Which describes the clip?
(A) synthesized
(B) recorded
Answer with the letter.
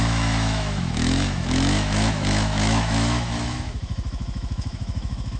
A